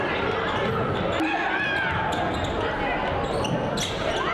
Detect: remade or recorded recorded